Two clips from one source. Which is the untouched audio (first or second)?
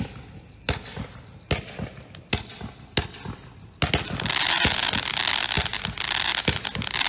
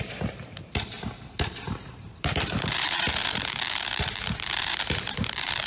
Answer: first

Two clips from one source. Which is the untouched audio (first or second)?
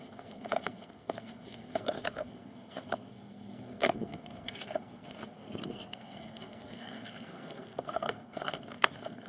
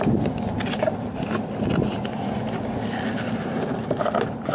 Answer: second